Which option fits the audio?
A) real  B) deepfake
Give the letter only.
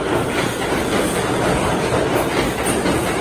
A